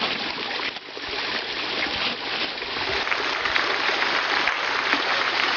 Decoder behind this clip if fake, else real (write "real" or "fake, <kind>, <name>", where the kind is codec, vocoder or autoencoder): real